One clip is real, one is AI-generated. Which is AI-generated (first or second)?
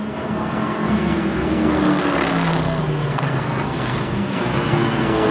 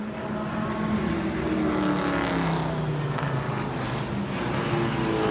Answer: first